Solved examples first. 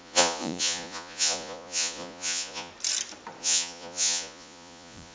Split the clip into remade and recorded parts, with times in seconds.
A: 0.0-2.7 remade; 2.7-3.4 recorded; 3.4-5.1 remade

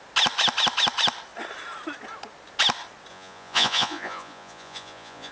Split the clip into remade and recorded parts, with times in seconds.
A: 0.0-3.1 recorded; 3.1-5.3 remade

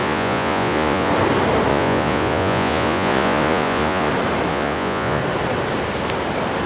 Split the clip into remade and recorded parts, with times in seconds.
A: 0.0-1.1 remade; 1.1-1.7 recorded; 1.7-4.1 remade; 4.1-4.5 recorded; 4.5-5.2 remade; 5.2-6.7 recorded

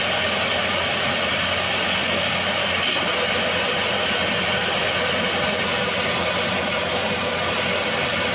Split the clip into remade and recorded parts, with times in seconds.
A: 0.0-8.3 recorded

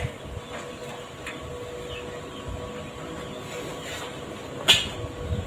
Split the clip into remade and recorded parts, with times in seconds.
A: 0.0-5.5 recorded

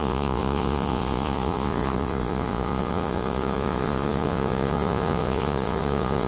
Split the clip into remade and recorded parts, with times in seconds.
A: 0.0-6.3 remade